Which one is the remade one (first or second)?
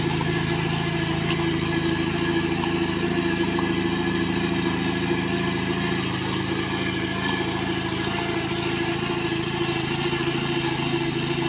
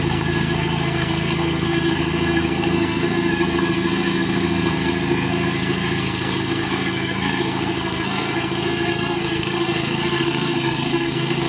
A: second